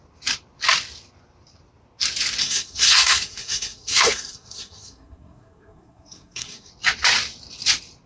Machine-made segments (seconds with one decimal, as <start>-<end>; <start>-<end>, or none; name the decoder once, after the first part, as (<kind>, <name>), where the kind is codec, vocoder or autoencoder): 2.4-6.7 (codec, SNAC)